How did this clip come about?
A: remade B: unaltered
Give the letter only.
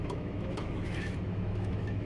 A